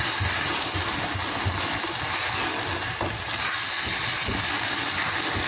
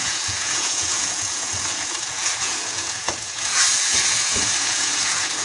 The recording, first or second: first